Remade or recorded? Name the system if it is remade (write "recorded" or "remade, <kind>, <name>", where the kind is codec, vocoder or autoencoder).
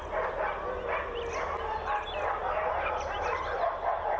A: recorded